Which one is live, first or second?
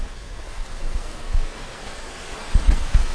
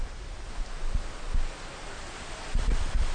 second